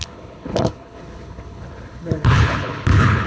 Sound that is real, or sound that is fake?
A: fake